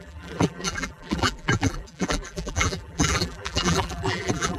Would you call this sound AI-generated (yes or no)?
yes